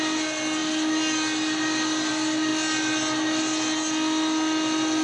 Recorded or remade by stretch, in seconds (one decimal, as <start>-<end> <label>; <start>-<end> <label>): 0.0-5.0 recorded